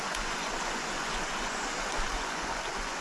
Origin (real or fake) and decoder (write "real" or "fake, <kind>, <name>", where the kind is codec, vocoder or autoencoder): fake, vocoder, Vocos